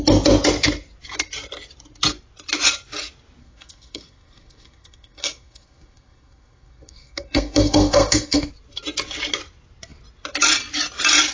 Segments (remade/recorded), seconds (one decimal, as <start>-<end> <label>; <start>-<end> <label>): 0.0-3.4 recorded; 3.4-8.5 remade; 8.5-11.3 recorded